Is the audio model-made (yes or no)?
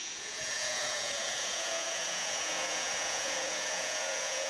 yes